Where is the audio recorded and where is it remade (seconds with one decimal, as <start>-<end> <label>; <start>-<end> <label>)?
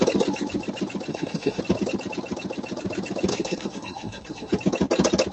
0.0-1.1 recorded; 1.1-1.6 remade; 1.6-3.3 recorded; 3.3-4.5 remade; 4.5-5.3 recorded